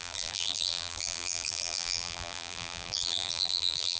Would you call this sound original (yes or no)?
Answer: no